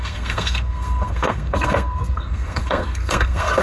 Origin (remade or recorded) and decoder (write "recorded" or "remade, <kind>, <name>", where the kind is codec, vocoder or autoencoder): remade, codec, SNAC